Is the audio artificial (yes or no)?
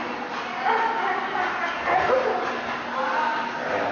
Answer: no